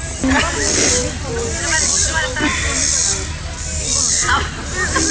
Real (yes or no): yes